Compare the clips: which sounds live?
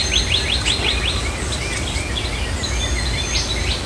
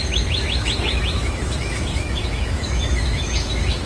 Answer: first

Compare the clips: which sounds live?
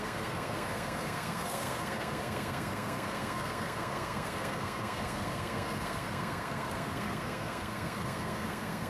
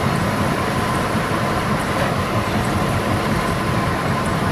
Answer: second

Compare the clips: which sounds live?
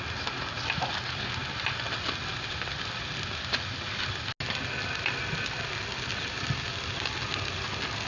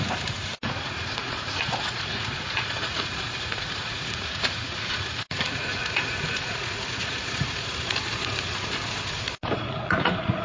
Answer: first